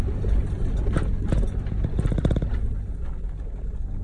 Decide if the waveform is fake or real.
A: real